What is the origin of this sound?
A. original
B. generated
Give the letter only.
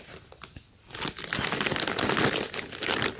A